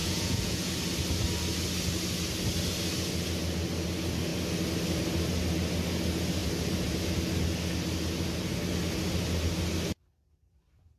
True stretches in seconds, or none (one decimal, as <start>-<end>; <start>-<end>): 0.7-11.0